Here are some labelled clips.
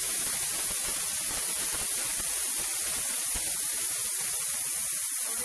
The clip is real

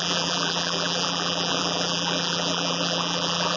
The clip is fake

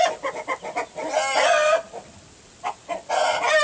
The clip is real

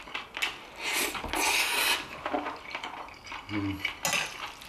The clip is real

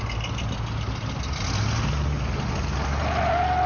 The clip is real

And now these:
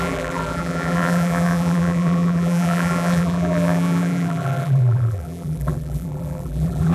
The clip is fake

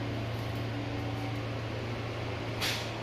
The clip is real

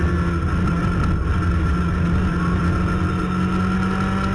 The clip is real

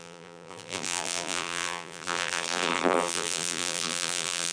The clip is fake